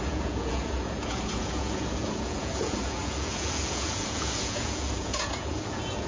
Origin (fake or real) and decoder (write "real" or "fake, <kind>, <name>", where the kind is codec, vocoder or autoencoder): fake, vocoder, Vocos